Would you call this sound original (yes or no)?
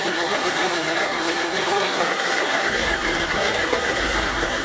no